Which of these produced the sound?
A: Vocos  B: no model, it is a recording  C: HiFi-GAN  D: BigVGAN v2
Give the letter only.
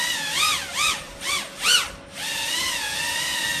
B